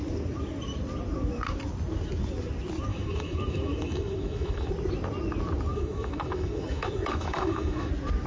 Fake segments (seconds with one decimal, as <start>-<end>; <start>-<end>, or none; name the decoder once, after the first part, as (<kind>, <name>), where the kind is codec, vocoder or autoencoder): 2.9-4.7 (autoencoder, DAC-VAE); 5.7-7.9